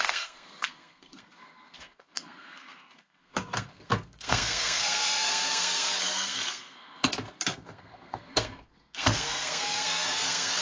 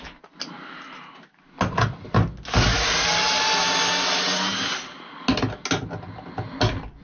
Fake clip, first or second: first